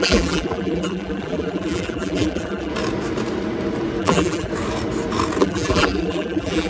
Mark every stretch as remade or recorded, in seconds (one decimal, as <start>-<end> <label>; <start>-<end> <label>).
0.0-2.7 remade; 2.7-4.0 recorded; 4.0-4.5 remade; 4.5-5.4 recorded; 5.4-6.7 remade